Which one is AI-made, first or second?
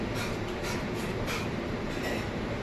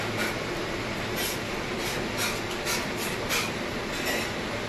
first